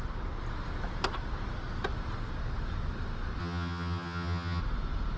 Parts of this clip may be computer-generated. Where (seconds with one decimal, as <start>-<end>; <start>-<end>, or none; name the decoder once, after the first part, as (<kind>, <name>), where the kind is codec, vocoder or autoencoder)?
3.4-4.6 (vocoder, HiFi-GAN)